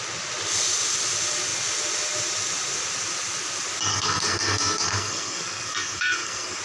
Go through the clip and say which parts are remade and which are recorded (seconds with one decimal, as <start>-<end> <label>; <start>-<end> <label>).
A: 0.0-3.9 recorded; 3.9-6.6 remade